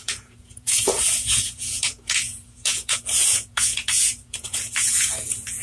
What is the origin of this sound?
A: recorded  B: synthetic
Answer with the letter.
B